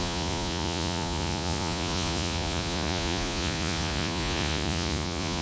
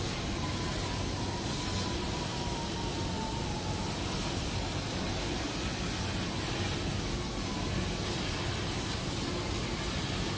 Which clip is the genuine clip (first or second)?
second